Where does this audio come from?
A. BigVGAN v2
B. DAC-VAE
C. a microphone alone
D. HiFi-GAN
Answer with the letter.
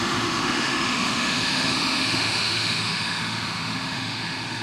B